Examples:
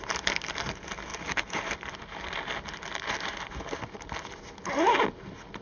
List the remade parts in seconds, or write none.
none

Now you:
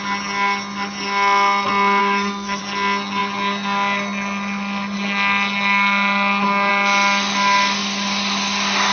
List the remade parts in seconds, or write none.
2.0-2.6 (codec, SNAC)

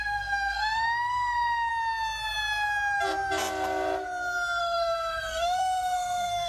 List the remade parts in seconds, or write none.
0.0-1.7 (codec, SNAC); 4.6-6.5

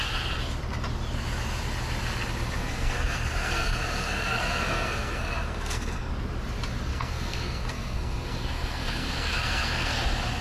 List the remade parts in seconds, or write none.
2.6-6.1 (codec, SNAC); 6.9-10.0

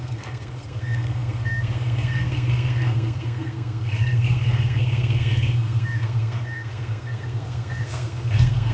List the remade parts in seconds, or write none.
0.0-8.7 (codec, SNAC)